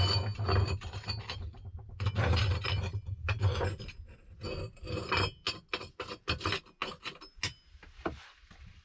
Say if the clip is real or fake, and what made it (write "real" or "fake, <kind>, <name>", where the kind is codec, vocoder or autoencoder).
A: real